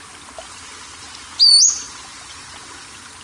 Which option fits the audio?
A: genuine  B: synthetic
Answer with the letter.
A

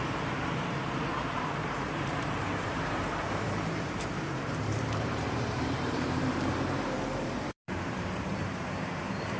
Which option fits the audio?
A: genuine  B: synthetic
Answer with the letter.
B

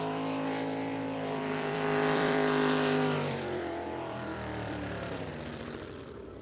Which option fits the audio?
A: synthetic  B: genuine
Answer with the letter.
A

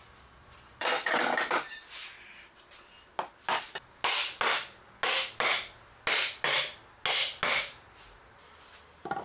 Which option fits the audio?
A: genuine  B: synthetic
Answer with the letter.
A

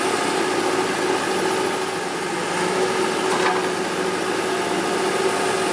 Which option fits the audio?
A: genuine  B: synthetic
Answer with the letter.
A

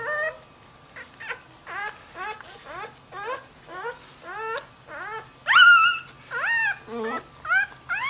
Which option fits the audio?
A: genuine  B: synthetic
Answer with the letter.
A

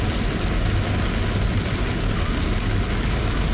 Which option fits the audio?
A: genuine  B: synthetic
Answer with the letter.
A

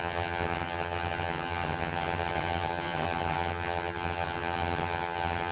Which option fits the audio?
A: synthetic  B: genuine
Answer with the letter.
A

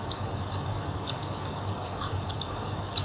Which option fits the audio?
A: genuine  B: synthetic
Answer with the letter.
B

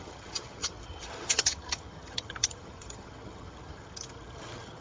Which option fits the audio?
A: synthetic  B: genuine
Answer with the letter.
A